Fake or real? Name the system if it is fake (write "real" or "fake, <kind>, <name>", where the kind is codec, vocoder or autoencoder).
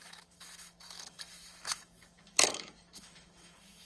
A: fake, autoencoder, DAC-VAE